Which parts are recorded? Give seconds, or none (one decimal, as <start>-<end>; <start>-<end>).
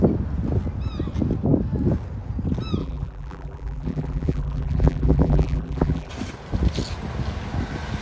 0.0-2.8; 6.1-8.0